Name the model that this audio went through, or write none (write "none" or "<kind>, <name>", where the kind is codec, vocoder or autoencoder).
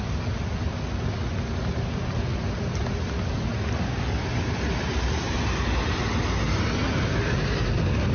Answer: none